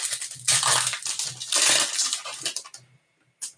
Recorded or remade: recorded